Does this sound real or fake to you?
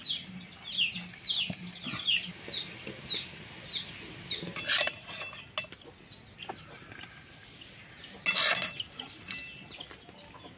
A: real